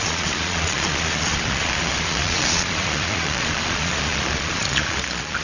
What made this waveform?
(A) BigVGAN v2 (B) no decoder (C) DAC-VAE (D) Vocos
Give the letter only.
D